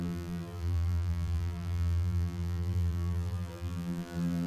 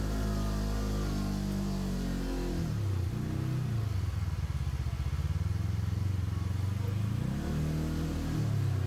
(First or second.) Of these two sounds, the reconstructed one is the first